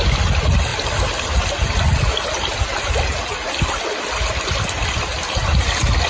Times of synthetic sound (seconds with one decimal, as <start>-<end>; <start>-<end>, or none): none